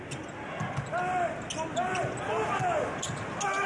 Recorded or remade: recorded